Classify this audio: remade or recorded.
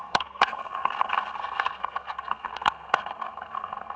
remade